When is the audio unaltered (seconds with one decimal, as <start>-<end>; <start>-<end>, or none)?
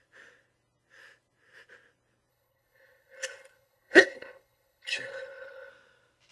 0.0-2.3; 5.7-6.3